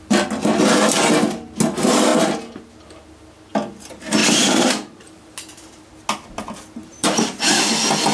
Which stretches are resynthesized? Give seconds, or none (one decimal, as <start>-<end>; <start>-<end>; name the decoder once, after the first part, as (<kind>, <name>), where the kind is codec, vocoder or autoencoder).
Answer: 4.2-5.8 (vocoder, BigVGAN v2); 6.8-7.6

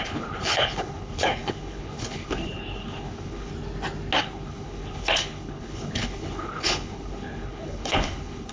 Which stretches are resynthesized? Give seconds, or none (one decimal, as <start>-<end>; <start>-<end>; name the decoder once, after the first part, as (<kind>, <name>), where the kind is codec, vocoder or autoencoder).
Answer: 0.0-3.5 (codec, HILCodec); 4.2-8.5

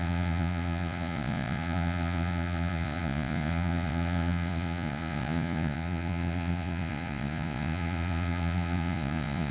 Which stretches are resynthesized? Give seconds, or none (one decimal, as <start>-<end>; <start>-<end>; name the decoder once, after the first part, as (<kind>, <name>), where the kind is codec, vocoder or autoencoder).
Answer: 0.0-9.5 (vocoder, Vocos)

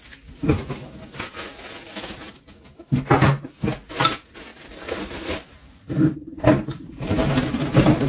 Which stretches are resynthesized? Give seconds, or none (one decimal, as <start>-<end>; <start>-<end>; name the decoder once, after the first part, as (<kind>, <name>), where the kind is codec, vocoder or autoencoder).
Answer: 4.5-8.1 (vocoder, BigVGAN v2)

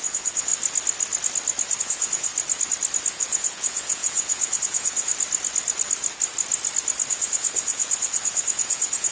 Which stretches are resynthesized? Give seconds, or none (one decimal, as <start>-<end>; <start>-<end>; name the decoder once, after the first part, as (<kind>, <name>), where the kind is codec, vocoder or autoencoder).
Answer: 0.0-0.5 (vocoder, Vocos); 1.8-2.3; 3.1-5.1; 7.1-9.1

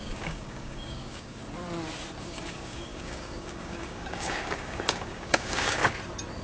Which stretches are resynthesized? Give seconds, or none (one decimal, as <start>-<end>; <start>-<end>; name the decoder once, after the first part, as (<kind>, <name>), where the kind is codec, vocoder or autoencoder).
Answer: 0.0-1.4 (codec, DAC); 2.2-5.8

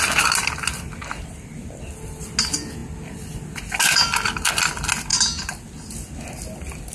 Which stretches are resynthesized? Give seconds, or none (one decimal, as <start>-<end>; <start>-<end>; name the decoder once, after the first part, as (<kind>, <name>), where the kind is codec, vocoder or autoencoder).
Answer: none

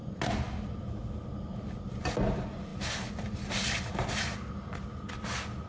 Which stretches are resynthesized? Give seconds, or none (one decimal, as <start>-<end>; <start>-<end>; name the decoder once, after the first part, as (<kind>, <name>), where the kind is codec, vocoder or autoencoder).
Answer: none